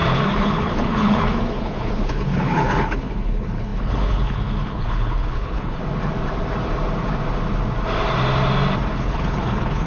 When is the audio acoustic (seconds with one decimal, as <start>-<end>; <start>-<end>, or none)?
5.8-8.9